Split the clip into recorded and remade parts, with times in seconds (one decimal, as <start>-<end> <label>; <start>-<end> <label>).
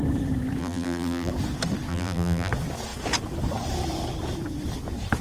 0.0-0.6 recorded; 0.6-1.3 remade; 1.3-1.9 recorded; 1.9-2.5 remade; 2.5-5.2 recorded